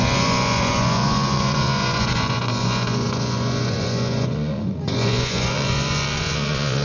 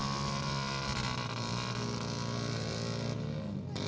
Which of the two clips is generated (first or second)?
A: first